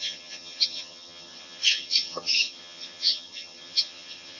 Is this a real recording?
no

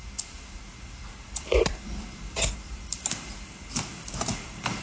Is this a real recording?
yes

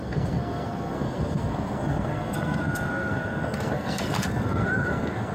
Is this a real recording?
no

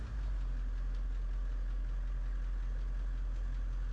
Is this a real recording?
yes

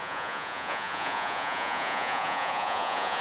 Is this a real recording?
no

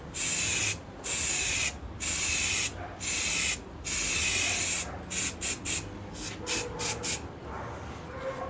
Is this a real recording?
yes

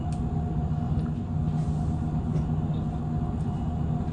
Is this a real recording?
yes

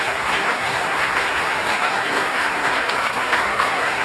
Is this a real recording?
no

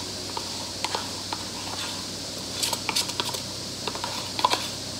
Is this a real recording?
yes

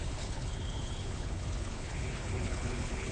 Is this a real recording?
no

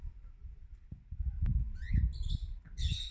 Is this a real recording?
yes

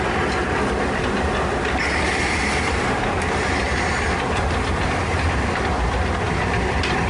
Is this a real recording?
no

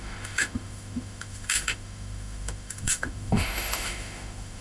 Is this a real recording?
no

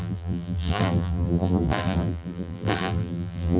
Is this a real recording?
no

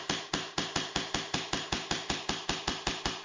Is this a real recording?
no